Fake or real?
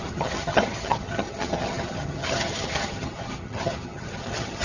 fake